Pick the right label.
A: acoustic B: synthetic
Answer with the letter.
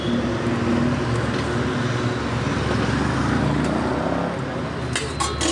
A